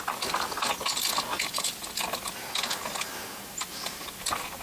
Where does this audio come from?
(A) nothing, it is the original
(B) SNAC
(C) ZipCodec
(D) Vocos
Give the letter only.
A